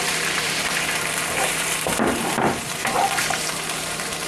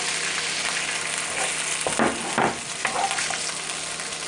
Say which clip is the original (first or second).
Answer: second